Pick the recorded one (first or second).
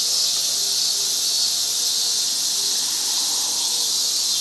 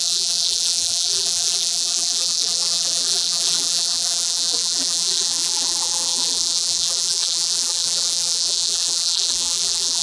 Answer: first